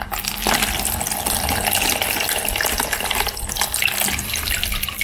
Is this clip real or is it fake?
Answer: real